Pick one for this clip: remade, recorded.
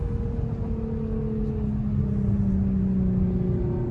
recorded